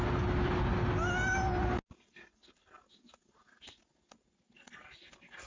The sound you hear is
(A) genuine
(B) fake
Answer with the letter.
A